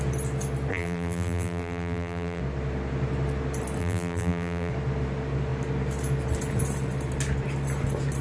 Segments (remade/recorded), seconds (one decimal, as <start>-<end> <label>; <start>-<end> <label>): 0.0-0.7 recorded; 0.7-2.4 remade; 2.4-3.8 recorded; 3.8-4.7 remade; 4.7-8.2 recorded